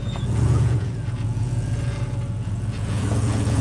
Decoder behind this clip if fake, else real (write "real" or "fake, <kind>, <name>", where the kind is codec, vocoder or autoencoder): fake, vocoder, Vocos